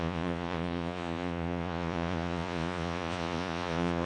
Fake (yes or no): yes